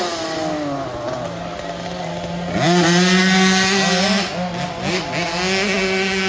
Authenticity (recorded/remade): recorded